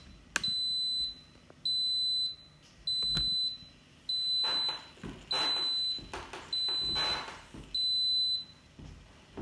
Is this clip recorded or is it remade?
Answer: recorded